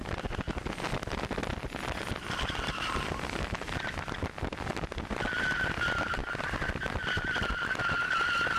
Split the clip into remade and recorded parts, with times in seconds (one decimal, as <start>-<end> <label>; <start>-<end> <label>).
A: 0.0-8.6 recorded